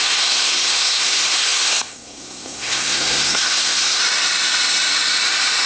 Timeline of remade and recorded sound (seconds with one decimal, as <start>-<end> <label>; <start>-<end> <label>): 0.0-4.0 remade; 4.0-5.7 recorded